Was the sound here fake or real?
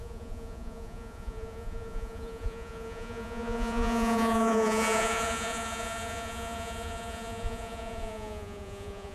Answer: fake